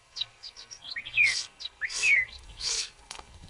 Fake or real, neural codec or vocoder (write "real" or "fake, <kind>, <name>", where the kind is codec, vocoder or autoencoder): fake, codec, SNAC